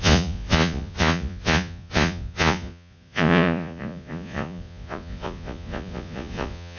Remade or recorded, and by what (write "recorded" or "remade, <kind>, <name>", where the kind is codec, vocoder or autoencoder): remade, vocoder, Vocos